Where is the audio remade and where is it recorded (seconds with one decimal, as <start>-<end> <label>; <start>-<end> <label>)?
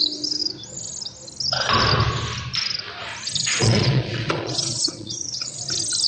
0.0-3.4 recorded; 3.4-5.6 remade; 5.6-6.1 recorded